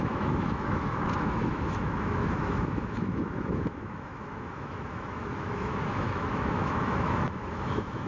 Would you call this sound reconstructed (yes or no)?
yes